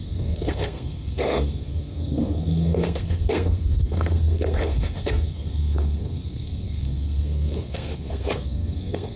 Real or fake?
fake